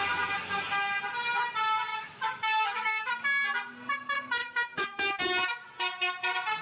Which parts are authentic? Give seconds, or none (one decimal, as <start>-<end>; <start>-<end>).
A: 0.0-1.9; 3.1-4.4; 5.2-6.6